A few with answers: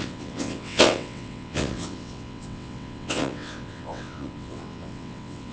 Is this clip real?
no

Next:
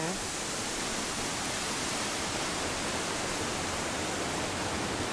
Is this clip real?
yes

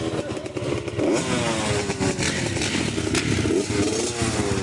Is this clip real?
yes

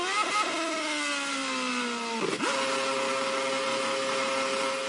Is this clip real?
yes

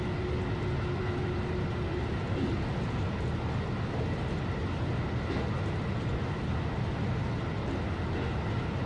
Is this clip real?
yes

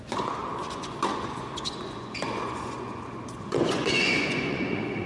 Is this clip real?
no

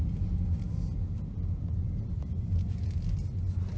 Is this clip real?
yes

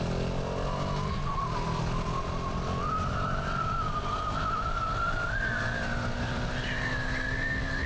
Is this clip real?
yes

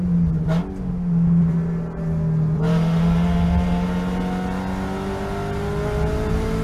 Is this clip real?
yes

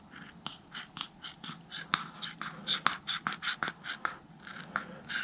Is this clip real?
yes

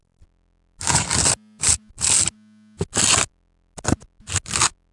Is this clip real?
yes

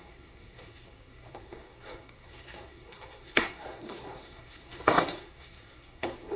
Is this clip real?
no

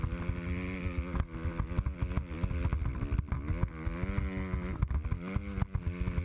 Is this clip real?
yes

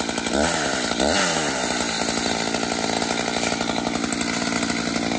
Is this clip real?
yes